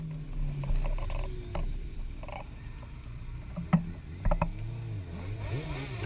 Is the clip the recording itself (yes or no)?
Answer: yes